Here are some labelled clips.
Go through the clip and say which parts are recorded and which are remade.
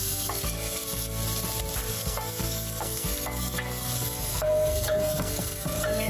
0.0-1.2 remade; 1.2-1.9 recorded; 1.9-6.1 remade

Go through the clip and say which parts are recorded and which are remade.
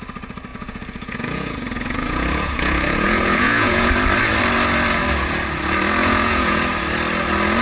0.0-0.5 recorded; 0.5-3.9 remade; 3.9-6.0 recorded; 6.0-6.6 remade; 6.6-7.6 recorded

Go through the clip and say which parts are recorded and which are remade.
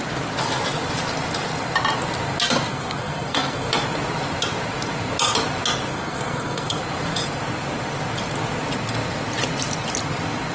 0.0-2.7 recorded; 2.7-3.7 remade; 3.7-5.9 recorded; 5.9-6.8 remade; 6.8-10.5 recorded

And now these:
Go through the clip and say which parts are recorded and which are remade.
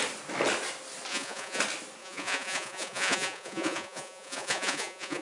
0.0-1.1 recorded; 1.1-1.6 remade; 1.6-2.0 recorded; 2.0-5.2 remade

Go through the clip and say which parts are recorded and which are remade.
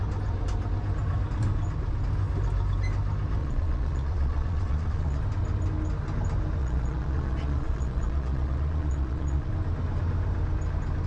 0.0-3.4 recorded; 3.4-5.2 remade; 5.2-6.6 recorded; 6.6-9.5 remade; 9.5-11.1 recorded